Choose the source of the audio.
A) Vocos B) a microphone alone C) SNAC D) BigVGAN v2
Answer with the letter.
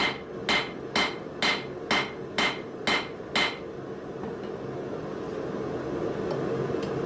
B